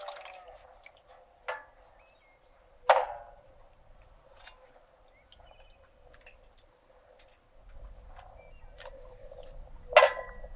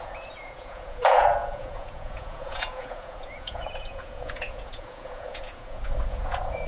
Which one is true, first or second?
first